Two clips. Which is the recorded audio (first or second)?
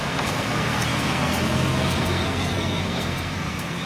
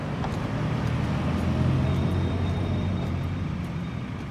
second